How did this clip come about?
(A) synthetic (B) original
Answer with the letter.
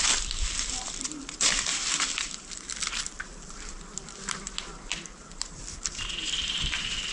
A